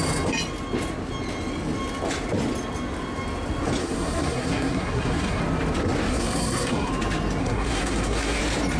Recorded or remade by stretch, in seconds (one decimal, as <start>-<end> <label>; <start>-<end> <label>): 0.0-3.8 recorded; 3.8-5.4 remade; 5.4-6.1 recorded; 6.1-6.9 remade; 6.9-7.4 recorded; 7.4-8.4 remade; 8.4-8.8 recorded